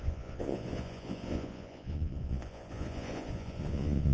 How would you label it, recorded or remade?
remade